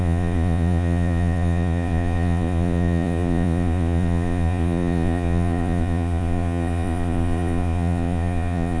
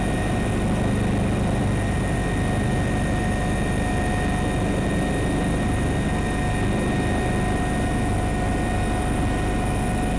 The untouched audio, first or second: second